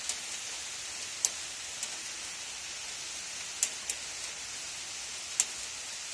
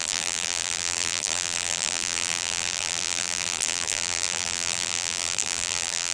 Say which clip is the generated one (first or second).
second